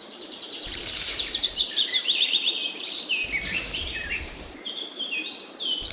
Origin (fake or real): fake